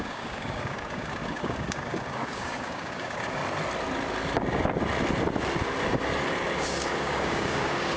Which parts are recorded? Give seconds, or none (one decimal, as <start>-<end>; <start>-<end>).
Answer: 3.4-6.6